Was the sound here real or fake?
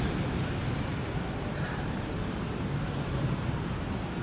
fake